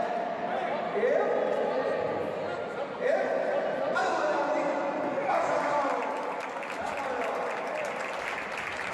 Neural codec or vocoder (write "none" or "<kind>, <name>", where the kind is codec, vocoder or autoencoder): none